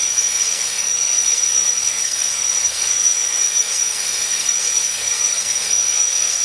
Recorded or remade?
remade